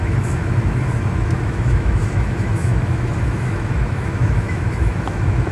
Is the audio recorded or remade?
remade